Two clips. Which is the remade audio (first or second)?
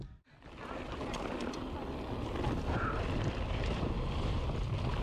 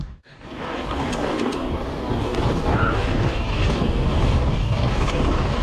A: second